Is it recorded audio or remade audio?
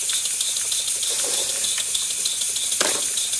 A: recorded